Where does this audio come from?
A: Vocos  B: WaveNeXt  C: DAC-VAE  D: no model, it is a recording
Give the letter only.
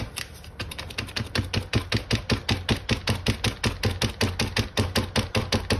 D